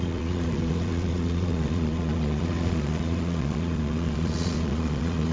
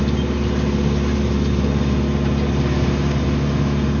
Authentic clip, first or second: second